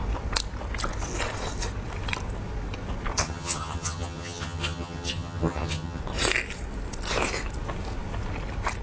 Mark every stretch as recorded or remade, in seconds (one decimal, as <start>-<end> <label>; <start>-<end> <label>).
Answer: 0.0-3.2 recorded; 3.2-6.0 remade; 6.0-8.8 recorded